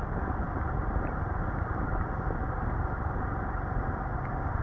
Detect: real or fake real